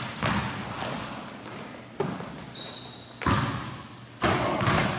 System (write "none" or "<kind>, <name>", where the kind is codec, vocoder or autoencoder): none